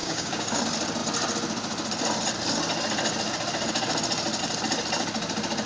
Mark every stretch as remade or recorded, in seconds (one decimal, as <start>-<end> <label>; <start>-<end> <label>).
0.0-0.6 remade; 0.6-5.7 recorded